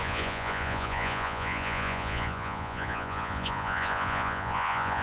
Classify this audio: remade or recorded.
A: remade